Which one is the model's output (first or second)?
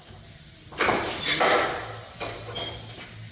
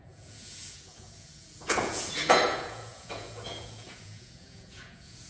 second